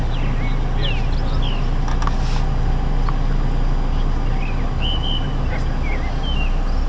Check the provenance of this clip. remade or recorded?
recorded